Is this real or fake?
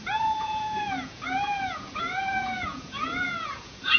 fake